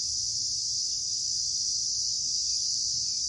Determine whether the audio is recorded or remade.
recorded